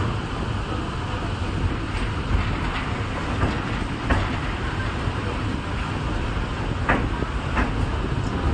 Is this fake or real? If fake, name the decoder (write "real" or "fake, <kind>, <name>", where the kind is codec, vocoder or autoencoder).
real